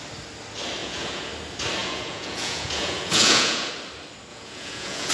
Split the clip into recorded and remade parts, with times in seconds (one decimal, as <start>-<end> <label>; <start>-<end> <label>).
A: 0.0-0.8 recorded; 0.8-1.3 remade; 1.3-1.8 recorded; 1.8-3.7 remade; 3.7-4.3 recorded; 4.3-5.1 remade